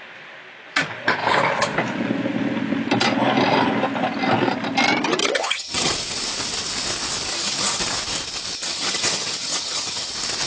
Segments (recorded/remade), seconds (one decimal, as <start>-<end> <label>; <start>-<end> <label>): 0.0-5.2 recorded; 5.2-5.9 remade; 5.9-7.3 recorded; 7.3-7.8 remade; 7.8-8.6 recorded; 8.6-10.1 remade; 10.1-10.5 recorded